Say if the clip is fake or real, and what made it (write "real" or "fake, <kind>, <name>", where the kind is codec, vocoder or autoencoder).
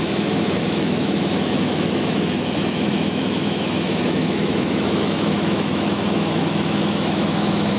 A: fake, autoencoder, DAC-VAE